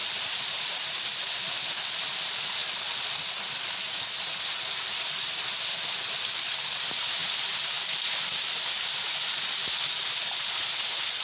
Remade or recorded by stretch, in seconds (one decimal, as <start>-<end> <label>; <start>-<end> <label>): 0.0-1.4 remade; 1.4-11.2 recorded